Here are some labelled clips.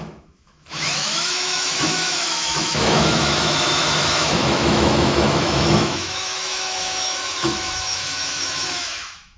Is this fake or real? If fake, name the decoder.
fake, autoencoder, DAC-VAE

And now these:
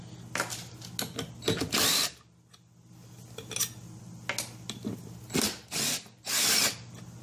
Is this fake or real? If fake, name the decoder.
real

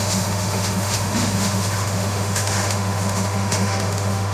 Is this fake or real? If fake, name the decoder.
fake, autoencoder, DAC-VAE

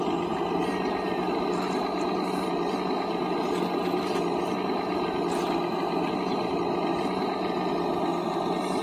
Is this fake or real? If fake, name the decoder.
real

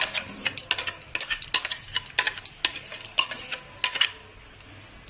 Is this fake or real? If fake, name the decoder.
real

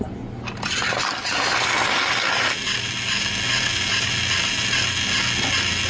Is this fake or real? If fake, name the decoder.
real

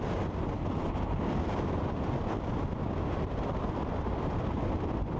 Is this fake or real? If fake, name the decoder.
real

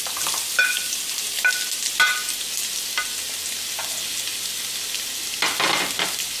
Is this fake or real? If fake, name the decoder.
real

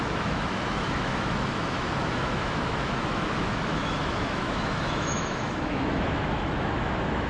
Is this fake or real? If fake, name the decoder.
fake, autoencoder, DAC-VAE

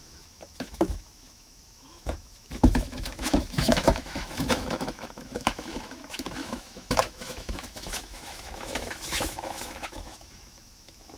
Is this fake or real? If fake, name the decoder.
fake, autoencoder, DAC-VAE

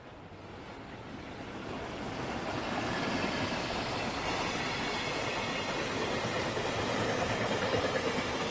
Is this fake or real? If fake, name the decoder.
real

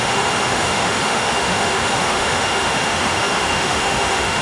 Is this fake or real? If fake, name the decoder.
fake, autoencoder, DAC-VAE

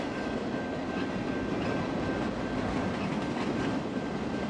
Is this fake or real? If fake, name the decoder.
real